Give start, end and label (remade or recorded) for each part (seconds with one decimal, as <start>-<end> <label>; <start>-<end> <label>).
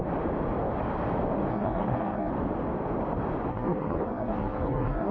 0.0-1.5 recorded; 1.5-2.3 remade; 2.3-3.5 recorded; 3.5-5.1 remade